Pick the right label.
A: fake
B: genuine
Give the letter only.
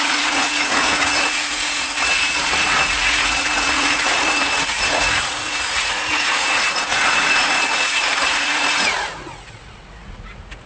A